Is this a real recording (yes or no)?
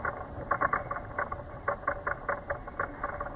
yes